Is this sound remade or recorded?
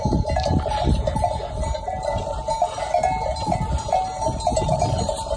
recorded